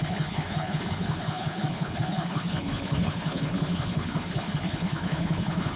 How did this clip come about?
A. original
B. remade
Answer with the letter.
B